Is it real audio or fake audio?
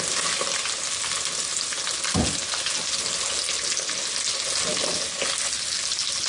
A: real